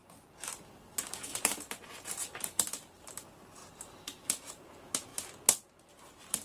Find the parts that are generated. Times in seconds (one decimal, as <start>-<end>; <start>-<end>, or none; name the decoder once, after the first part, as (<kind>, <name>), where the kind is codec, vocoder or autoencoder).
0.8-3.6 (vocoder, BigVGAN v2); 4.2-5.1; 5.9-6.4